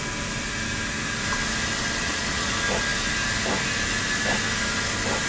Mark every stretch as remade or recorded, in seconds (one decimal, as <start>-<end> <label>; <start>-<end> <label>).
0.0-2.0 recorded; 2.0-2.5 remade; 2.5-5.3 recorded